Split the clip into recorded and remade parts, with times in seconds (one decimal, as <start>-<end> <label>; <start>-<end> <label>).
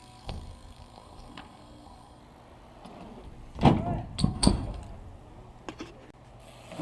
0.0-2.2 remade; 2.2-4.2 recorded; 4.2-4.8 remade; 4.8-6.8 recorded